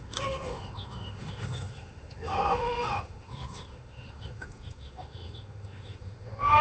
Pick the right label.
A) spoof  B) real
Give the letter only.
A